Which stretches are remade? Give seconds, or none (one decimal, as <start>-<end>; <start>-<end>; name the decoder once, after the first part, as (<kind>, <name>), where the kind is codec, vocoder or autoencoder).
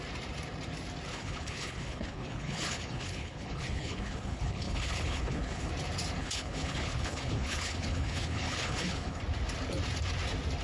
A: 1.1-5.7 (codec, HILCodec); 6.2-9.2